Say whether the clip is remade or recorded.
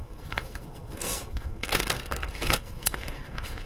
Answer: remade